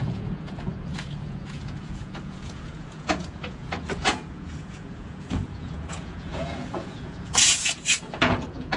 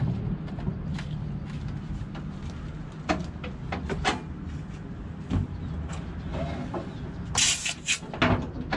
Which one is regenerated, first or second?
first